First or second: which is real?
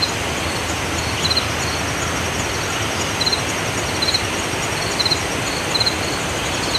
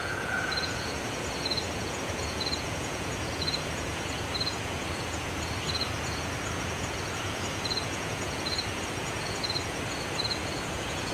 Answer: first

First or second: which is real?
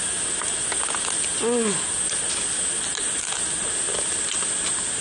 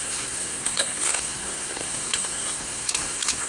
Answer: first